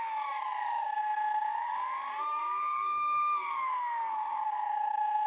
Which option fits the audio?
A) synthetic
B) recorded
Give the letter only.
A